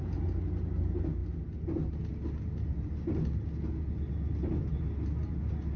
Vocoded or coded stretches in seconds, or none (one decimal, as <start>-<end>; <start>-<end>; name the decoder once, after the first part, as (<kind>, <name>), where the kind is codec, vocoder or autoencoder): none

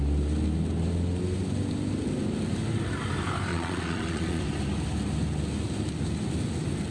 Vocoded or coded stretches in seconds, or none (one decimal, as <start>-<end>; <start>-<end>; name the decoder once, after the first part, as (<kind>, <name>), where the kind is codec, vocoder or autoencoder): 3.5-4.4 (vocoder, Vocos)